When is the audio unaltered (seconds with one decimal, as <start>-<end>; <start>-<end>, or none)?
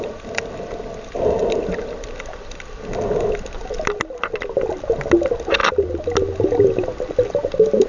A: 0.0-7.9